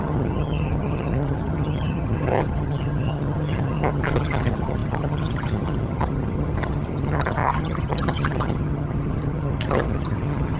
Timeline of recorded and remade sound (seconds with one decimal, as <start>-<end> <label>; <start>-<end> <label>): 0.0-10.6 remade

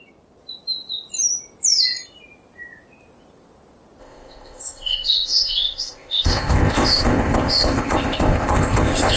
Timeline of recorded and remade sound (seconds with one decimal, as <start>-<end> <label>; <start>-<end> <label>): 0.0-4.0 recorded; 4.0-9.2 remade